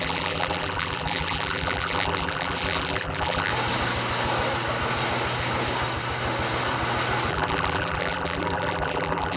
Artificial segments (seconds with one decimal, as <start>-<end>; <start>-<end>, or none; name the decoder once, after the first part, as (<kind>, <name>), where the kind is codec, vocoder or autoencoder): 0.0-3.5 (vocoder, BigVGAN v2); 7.3-9.4